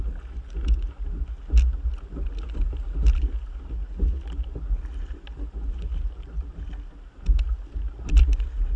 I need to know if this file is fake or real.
real